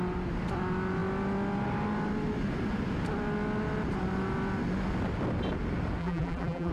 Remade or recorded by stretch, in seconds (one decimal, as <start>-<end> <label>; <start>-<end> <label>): 0.0-6.0 recorded; 6.0-6.7 remade